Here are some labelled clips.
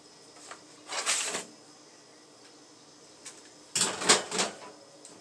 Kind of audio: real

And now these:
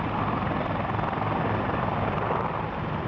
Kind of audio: real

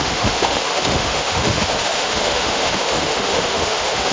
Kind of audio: fake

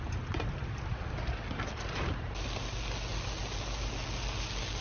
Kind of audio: real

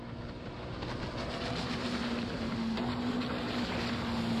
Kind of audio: real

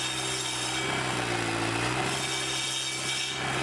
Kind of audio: real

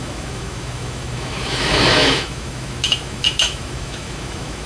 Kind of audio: fake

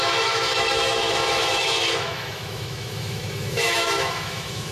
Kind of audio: fake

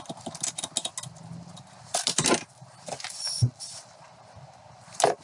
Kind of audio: real